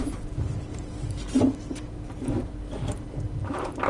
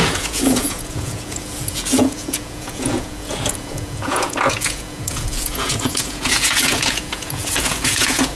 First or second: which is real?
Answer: first